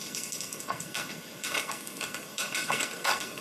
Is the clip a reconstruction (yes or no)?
yes